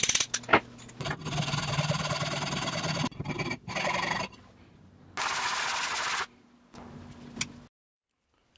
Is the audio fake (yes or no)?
no